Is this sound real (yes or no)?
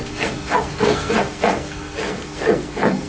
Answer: no